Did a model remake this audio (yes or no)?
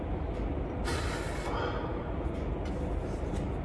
no